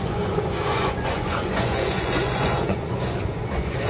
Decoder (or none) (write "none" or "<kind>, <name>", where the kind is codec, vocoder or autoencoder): vocoder, Vocos